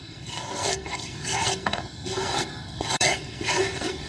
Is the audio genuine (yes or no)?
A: no